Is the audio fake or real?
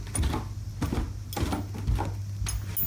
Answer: real